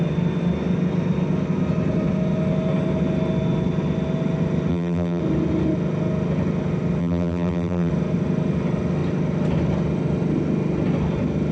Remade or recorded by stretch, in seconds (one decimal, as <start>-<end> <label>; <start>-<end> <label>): 0.0-4.7 recorded; 4.7-5.2 remade; 5.2-7.0 recorded; 7.0-7.9 remade; 7.9-11.5 recorded